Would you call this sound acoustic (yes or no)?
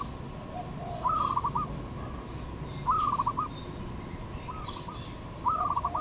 yes